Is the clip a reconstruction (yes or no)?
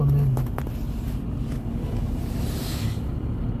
no